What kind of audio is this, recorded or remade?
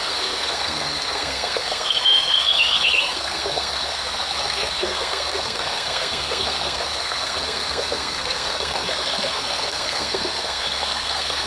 remade